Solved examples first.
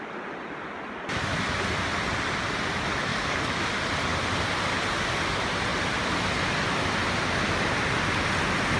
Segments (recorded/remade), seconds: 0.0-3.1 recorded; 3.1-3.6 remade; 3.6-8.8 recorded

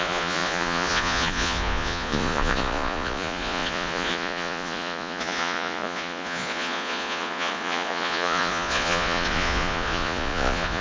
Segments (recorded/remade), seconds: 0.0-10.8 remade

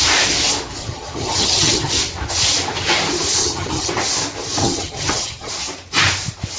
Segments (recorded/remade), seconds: 0.0-0.8 recorded; 0.8-1.9 remade; 1.9-3.4 recorded; 3.4-3.9 remade; 3.9-4.6 recorded; 4.6-5.5 remade; 5.5-6.6 recorded

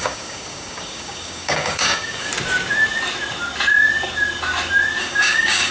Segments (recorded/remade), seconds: 0.0-2.3 remade; 2.3-5.0 recorded; 5.0-5.7 remade